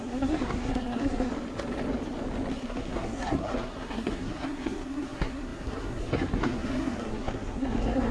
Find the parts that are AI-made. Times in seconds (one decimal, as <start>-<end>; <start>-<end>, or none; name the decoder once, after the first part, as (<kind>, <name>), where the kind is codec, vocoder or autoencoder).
0.0-1.3 (codec, SNAC); 2.5-8.1